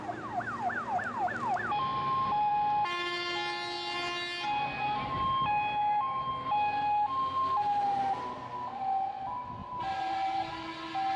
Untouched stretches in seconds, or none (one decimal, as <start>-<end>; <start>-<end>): 0.0-1.9; 2.5-9.6; 10.5-11.2